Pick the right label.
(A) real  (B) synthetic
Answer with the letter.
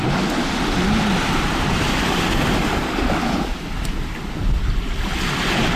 A